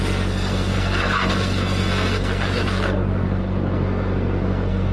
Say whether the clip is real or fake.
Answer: fake